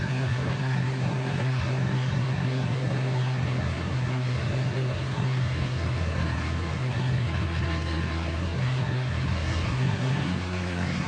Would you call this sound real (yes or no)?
no